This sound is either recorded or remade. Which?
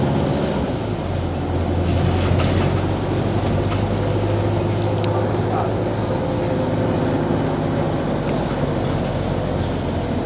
recorded